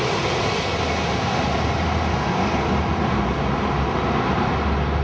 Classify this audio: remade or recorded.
recorded